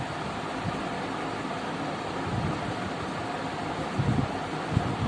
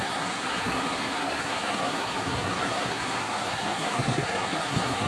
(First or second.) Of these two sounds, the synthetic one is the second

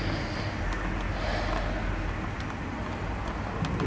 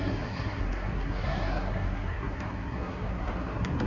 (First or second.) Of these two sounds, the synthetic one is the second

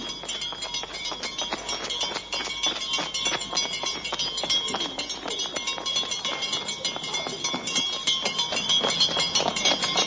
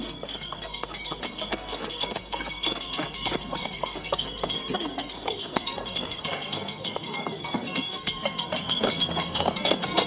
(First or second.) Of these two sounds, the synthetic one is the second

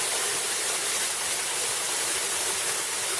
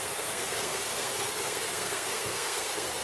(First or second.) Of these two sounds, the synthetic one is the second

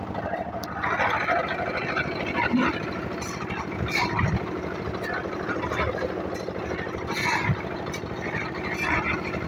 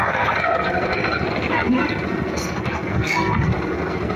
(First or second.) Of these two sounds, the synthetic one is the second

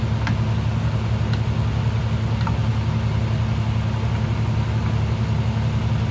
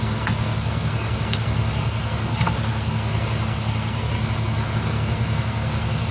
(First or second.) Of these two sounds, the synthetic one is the second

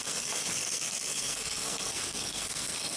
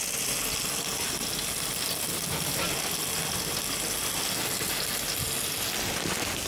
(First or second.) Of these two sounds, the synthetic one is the first